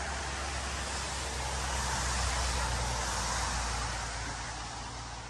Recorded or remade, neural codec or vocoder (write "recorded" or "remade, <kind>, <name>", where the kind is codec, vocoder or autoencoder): recorded